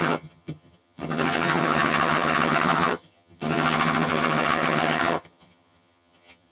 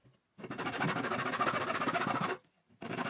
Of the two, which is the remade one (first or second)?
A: first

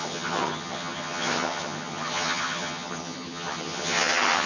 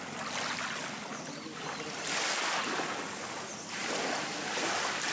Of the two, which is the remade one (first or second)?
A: first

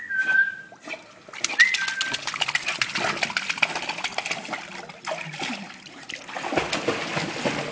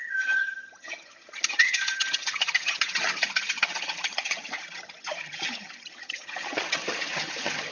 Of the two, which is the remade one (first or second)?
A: second